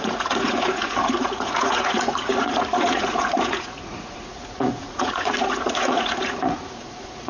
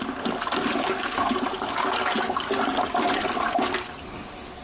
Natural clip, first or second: second